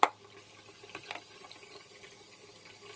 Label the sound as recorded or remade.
recorded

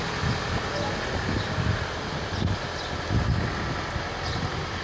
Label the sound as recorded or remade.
recorded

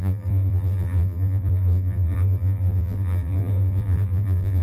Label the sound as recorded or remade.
remade